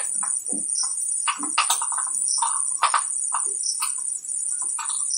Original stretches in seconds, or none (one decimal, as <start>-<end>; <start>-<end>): 0.0-0.9; 1.4-5.2

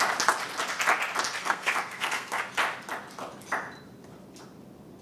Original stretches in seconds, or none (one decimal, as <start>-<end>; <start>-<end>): 0.0-1.4; 2.4-5.0

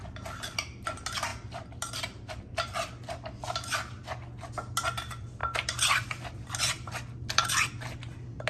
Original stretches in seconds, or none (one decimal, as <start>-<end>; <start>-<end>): 0.0-8.5

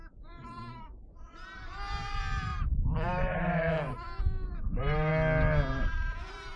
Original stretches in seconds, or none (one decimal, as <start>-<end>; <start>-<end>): 0.9-2.1; 5.1-5.7

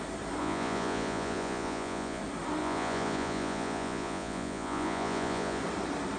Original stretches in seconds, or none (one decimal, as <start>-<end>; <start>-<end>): 0.0-0.4; 2.2-2.6; 5.6-6.2

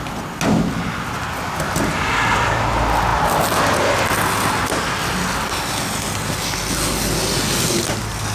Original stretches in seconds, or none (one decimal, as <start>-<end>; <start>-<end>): 0.0-8.3